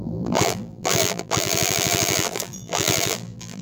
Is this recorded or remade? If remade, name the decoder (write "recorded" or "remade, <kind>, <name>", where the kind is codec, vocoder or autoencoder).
remade, vocoder, BigVGAN v2